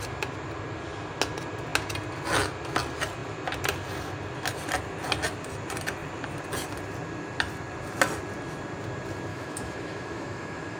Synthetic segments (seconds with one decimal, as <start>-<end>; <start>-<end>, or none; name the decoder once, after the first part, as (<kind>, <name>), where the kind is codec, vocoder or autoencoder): 9.3-10.8 (autoencoder, DAC-VAE)

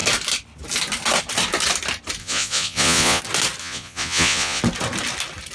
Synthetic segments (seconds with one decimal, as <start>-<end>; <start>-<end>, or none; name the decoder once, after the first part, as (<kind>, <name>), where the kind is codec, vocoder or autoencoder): 2.2-3.2 (vocoder, Vocos); 3.6-4.6

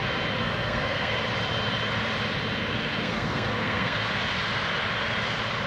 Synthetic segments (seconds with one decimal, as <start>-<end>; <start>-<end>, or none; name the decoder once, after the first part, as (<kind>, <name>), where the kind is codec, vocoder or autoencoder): 0.4-1.1 (codec, SNAC); 2.7-4.1

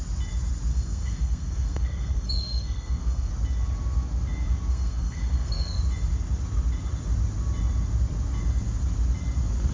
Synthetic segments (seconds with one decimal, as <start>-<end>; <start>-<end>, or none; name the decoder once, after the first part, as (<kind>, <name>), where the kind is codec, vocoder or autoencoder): 0.7-3.3 (codec, SNAC); 4.7-5.8

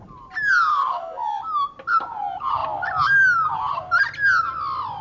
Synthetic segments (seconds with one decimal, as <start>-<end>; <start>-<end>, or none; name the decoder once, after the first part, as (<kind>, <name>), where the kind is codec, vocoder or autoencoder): 0.7-1.4 (codec, DAC)

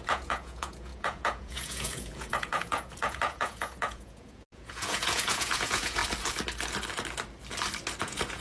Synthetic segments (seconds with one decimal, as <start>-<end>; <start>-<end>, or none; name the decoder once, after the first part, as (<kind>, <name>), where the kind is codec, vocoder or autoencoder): 0.0-6.0 (vocoder, Vocos); 8.0-8.4

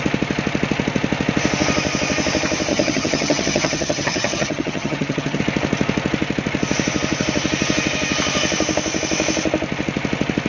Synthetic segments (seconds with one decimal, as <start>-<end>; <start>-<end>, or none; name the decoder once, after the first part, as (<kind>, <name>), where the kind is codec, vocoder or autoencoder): 2.7-5.4 (vocoder, HiFi-GAN)

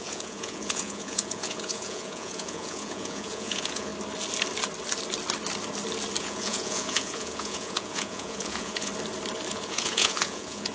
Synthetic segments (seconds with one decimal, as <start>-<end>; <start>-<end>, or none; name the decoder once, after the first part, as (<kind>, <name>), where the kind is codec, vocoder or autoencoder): 0.0-3.9 (vocoder, Vocos); 6.2-8.9; 9.5-10.7